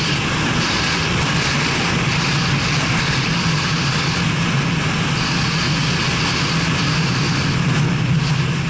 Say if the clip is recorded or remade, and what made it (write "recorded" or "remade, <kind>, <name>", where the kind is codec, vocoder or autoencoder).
recorded